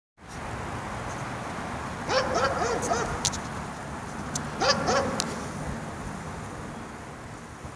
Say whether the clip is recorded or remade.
recorded